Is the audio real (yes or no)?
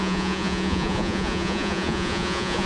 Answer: no